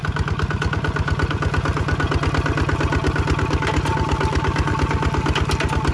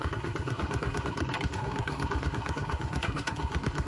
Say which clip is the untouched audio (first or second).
first